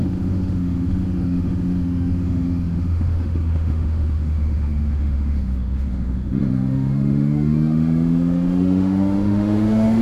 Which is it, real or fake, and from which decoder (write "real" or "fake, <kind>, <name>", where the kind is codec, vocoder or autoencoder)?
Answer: fake, autoencoder, DAC-VAE